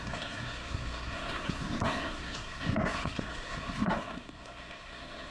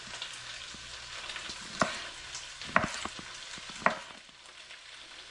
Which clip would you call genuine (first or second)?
second